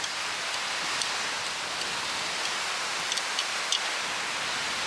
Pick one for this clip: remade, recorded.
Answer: recorded